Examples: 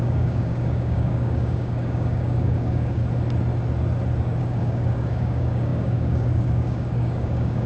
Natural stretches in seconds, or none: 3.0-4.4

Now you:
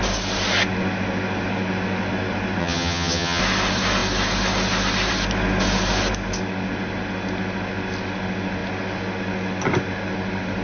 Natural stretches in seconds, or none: 0.0-2.6; 3.4-10.6

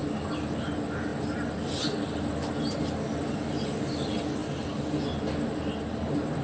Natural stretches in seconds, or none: 0.0-6.4

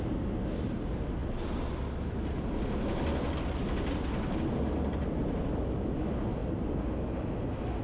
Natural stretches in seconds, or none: 0.0-7.8

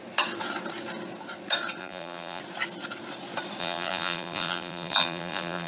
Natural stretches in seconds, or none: 0.0-1.8; 2.4-3.6